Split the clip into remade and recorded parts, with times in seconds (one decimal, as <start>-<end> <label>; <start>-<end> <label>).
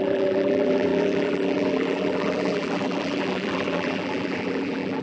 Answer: 0.0-5.0 remade